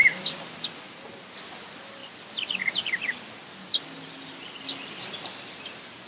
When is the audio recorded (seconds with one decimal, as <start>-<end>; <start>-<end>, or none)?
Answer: 0.0-6.1